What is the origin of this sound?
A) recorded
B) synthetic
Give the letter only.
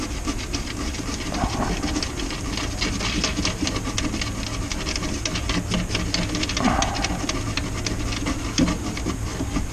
A